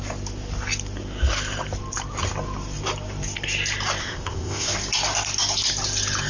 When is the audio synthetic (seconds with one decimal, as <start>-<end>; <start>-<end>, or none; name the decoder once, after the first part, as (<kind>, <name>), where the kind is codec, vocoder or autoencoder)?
4.0-4.7 (codec, ZipCodec)

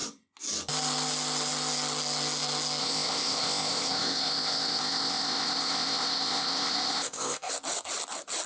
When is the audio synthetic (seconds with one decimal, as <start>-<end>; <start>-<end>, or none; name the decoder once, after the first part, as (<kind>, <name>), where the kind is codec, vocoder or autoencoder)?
2.8-7.5 (codec, ZipCodec)